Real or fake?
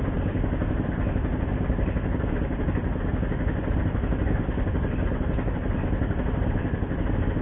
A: real